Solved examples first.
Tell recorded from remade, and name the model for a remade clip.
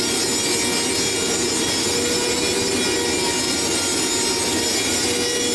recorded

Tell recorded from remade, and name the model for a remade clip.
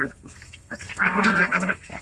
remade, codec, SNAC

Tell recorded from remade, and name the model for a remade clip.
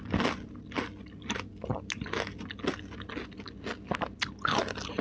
recorded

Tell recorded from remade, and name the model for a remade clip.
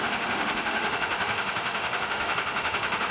remade, autoencoder, DAC-VAE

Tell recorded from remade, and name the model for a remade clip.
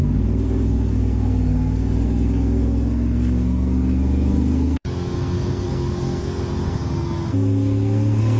remade, codec, SNAC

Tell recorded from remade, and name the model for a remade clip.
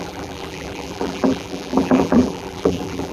remade, vocoder, BigVGAN v2